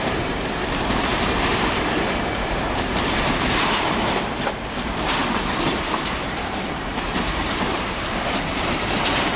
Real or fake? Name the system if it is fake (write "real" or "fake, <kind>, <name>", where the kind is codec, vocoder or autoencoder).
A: fake, vocoder, BigVGAN v2